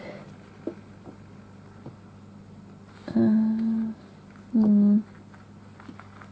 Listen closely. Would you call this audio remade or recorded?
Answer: recorded